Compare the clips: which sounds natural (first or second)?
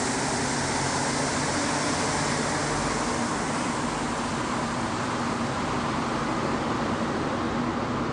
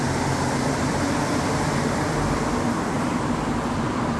first